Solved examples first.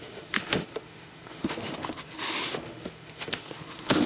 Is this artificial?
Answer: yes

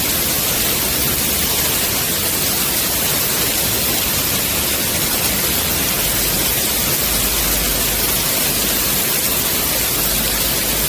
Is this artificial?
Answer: no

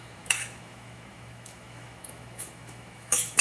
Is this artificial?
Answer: yes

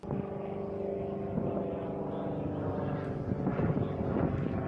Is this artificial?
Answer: no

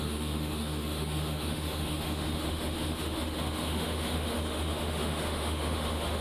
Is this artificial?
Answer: yes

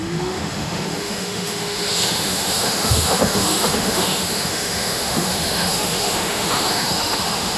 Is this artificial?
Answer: yes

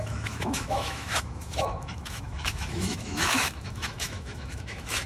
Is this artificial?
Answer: yes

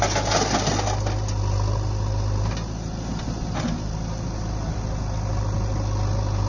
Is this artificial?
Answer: no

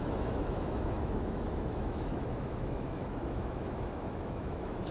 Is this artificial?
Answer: yes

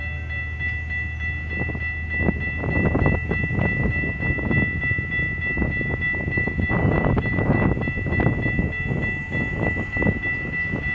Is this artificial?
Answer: no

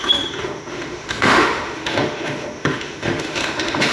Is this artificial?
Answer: yes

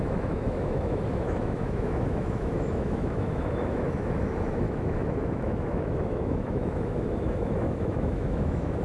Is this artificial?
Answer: yes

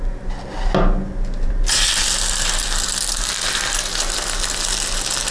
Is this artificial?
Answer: no